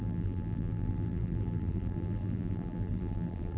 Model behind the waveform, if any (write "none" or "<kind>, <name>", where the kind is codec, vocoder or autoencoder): vocoder, BigVGAN v2